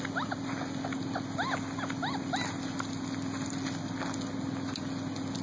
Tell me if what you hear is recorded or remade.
recorded